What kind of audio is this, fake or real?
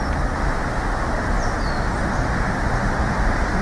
real